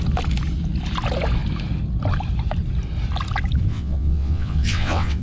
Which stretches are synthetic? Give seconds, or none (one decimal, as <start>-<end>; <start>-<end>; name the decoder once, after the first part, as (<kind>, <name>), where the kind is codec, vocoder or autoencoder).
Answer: 3.7-5.2 (vocoder, WaveNeXt)